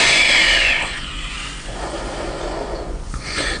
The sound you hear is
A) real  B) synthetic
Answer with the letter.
B